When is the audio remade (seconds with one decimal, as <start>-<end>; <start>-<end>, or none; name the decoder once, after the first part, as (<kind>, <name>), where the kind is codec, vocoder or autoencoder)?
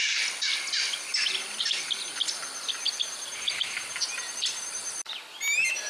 none